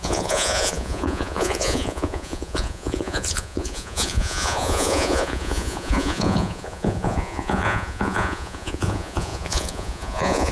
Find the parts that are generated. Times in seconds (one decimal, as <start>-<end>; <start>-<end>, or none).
0.0-10.5